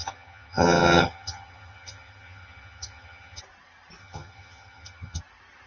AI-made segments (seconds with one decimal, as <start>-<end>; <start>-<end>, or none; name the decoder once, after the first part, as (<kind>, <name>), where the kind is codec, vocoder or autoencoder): 0.0-3.4 (vocoder, HiFi-GAN); 4.0-5.2